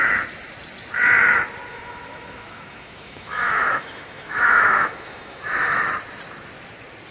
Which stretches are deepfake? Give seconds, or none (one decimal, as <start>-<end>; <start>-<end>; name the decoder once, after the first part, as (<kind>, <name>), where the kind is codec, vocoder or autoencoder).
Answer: 1.7-5.8 (autoencoder, DAC-VAE)